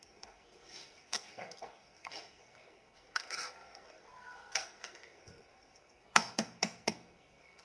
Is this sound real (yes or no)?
no